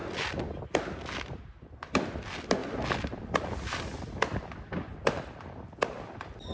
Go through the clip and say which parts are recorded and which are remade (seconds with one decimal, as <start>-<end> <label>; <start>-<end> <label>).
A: 0.0-0.6 remade; 0.6-2.6 recorded; 2.6-5.3 remade; 5.3-6.5 recorded